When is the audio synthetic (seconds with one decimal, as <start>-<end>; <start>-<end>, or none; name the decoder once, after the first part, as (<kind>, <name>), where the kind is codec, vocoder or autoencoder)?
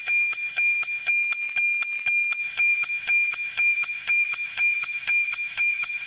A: 0.0-1.1 (autoencoder, DAC-VAE); 2.4-6.1